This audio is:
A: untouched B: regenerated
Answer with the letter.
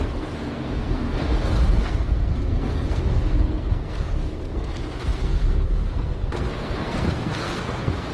B